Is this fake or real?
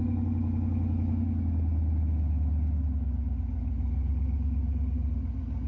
real